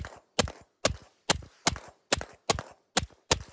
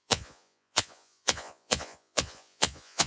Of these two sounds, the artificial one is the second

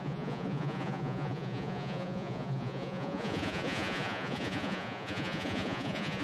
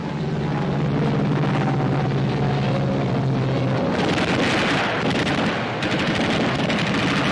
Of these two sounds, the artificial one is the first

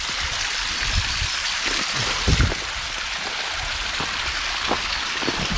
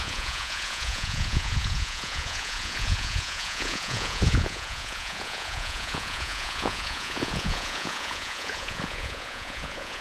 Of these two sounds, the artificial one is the second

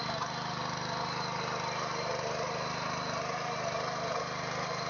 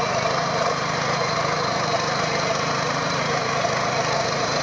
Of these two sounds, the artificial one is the second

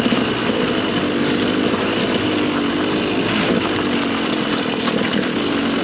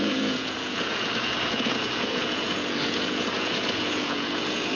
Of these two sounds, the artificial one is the second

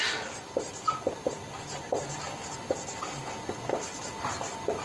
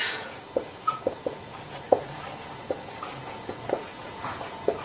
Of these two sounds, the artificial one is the second